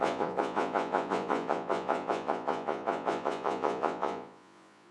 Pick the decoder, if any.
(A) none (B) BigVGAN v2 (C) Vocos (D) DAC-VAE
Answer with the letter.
C